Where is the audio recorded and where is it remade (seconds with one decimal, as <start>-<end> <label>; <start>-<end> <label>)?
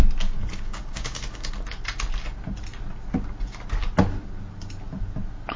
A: 0.0-0.4 recorded; 0.4-1.5 remade; 1.5-5.6 recorded